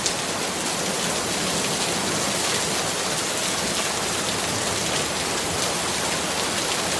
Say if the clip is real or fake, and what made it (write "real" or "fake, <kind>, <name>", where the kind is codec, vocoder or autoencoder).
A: real